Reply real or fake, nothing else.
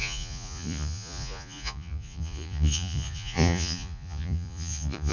fake